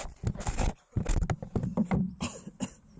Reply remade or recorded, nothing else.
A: recorded